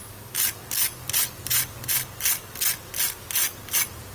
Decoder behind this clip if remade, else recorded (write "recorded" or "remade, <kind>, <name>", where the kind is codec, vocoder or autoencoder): recorded